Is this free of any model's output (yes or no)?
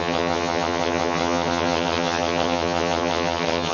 no